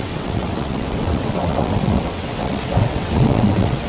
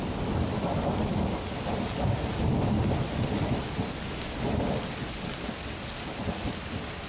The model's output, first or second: first